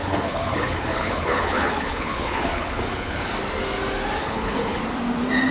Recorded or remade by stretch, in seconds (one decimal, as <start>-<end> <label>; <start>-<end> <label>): 0.0-3.3 remade; 3.3-4.2 recorded; 4.2-4.8 remade; 4.8-5.5 recorded

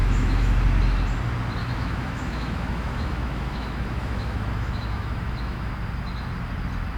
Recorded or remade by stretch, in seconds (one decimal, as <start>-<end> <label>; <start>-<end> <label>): 0.0-0.5 remade; 0.5-1.6 recorded; 1.6-5.7 remade; 5.7-7.0 recorded

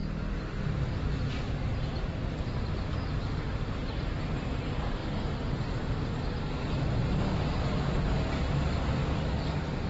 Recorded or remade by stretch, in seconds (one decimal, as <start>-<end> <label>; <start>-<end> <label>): 0.0-9.9 recorded

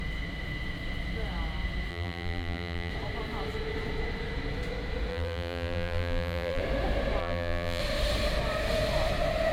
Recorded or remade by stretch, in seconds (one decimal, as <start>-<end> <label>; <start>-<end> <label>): 0.0-1.9 recorded; 1.9-2.9 remade; 2.9-5.1 recorded; 5.1-6.6 remade; 6.6-7.2 recorded; 7.2-7.8 remade; 7.8-9.5 recorded